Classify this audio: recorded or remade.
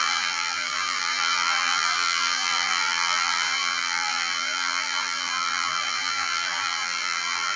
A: remade